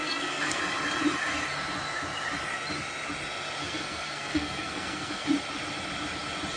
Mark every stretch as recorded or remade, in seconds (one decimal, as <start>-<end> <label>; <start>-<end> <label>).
0.0-0.6 remade; 0.6-3.6 recorded; 3.6-5.3 remade; 5.3-6.6 recorded